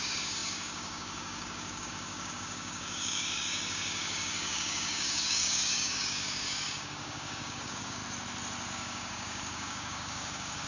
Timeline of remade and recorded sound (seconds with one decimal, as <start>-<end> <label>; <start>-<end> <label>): 0.0-8.0 remade; 8.0-8.7 recorded; 8.7-10.7 remade